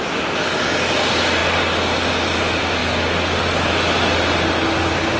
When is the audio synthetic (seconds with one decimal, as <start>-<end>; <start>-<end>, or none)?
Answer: none